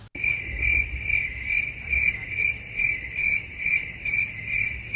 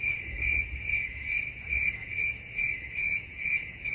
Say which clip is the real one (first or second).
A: first